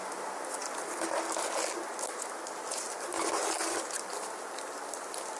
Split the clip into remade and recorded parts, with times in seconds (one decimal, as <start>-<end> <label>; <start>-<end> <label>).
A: 0.0-5.4 recorded